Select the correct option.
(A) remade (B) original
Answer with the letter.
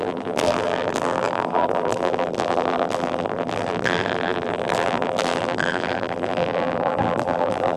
A